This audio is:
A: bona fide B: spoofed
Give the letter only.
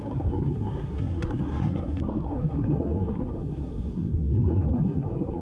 B